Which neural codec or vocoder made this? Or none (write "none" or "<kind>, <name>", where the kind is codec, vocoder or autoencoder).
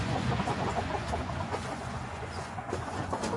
vocoder, Vocos